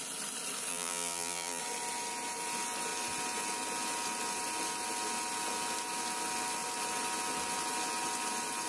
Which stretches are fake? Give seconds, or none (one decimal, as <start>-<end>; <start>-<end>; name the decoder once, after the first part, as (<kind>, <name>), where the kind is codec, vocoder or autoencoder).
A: 0.7-1.6 (vocoder, BigVGAN v2)